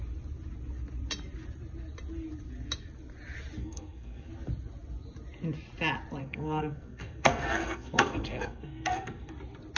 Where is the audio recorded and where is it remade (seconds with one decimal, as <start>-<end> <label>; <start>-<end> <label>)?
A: 0.0-3.6 recorded; 3.6-4.3 remade; 4.3-6.2 recorded; 6.2-9.3 remade; 9.3-9.8 recorded